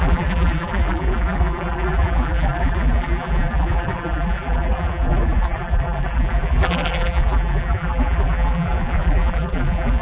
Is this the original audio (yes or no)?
no